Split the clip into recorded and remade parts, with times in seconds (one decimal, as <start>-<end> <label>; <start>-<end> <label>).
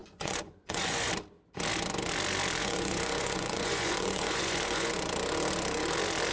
0.0-1.1 remade; 1.1-2.6 recorded; 2.6-4.9 remade; 4.9-6.3 recorded